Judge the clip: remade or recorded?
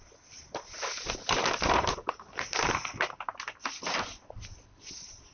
recorded